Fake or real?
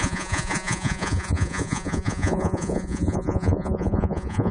fake